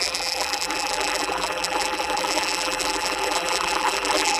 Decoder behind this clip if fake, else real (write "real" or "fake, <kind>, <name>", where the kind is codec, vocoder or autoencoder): fake, vocoder, BigVGAN v2